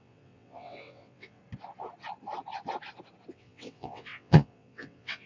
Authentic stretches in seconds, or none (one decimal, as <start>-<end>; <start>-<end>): 1.4-3.3